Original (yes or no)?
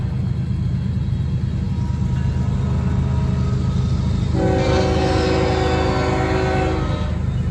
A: yes